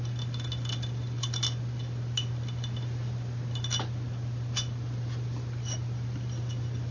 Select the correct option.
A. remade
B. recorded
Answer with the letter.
B